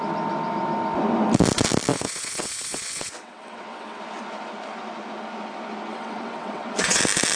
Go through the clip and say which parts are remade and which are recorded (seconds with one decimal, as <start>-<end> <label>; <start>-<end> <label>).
0.0-1.9 recorded; 1.9-4.0 remade; 4.0-5.9 recorded; 5.9-7.0 remade; 7.0-7.4 recorded